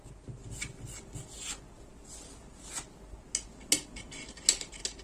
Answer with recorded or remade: recorded